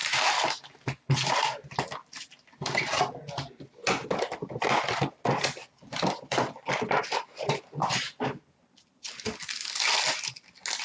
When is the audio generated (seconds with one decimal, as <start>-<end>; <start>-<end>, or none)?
5.6-7.0